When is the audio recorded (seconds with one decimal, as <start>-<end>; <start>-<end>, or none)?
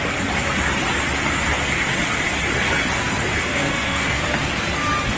0.0-3.4; 4.2-5.2